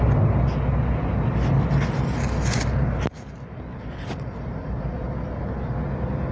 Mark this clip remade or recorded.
recorded